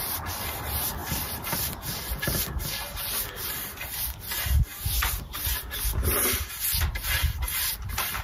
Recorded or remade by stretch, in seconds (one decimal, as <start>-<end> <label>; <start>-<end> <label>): 0.0-1.0 recorded; 1.0-1.6 remade; 1.6-8.2 recorded